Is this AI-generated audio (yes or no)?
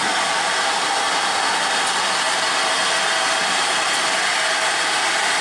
no